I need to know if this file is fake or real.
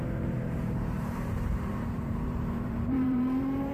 fake